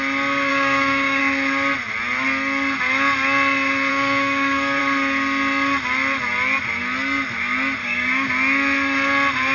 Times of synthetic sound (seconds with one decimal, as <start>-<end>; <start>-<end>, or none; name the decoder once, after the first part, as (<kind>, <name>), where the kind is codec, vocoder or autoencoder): 0.5-1.2 (codec, DAC); 3.9-4.8; 7.8-8.3